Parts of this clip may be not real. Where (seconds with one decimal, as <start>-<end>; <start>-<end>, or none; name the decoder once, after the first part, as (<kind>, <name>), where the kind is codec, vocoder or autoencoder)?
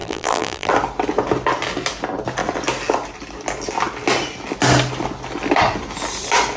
0.0-0.7 (vocoder, BigVGAN v2)